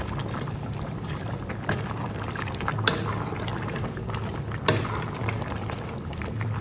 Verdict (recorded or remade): remade